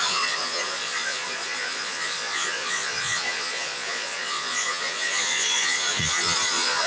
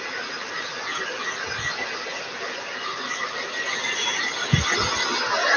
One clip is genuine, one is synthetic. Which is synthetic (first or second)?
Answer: first